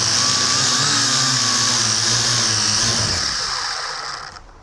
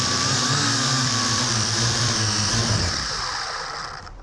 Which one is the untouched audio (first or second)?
first